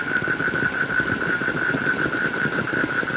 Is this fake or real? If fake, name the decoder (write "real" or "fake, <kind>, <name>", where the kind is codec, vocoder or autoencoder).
real